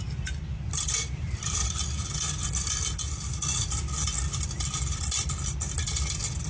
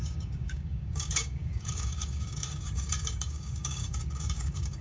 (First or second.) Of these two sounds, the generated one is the second